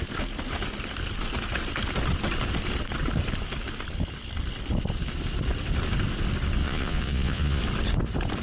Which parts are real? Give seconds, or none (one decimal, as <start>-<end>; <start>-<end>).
0.0-6.6; 7.6-8.4